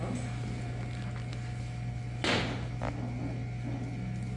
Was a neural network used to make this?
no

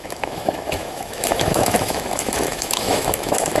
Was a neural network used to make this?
yes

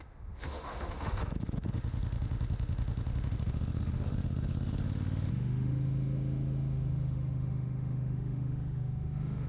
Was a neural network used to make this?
yes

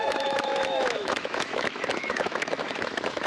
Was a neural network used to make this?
yes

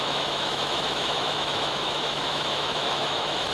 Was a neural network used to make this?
yes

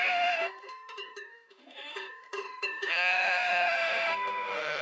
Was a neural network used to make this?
yes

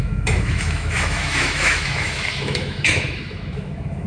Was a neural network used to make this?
yes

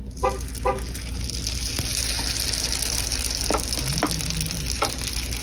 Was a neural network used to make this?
no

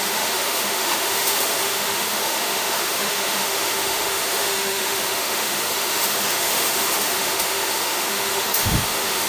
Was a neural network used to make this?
yes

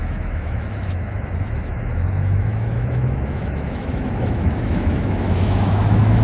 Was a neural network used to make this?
yes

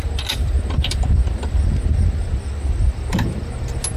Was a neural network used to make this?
no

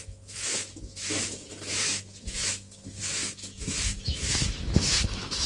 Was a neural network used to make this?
yes